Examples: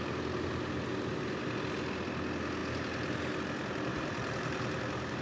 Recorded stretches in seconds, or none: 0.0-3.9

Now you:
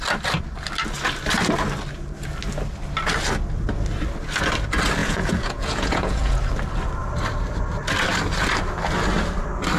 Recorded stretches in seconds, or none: 0.0-5.0; 6.4-9.8

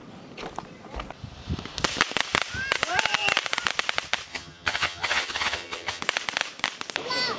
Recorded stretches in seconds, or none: 0.0-4.3; 6.0-7.4

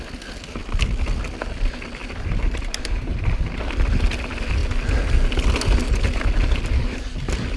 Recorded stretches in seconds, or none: 0.0-2.0; 2.8-7.6

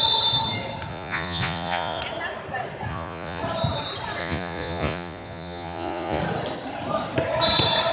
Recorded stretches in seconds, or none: 0.0-0.9; 2.0-2.9; 3.4-4.2; 6.2-7.9

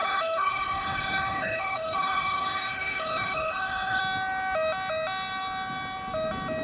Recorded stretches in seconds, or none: 4.0-6.6